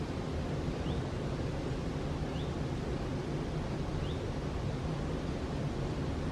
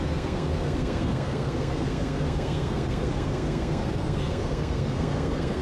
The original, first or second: first